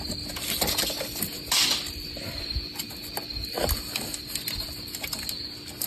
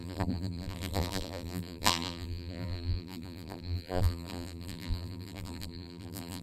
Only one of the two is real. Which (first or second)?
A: first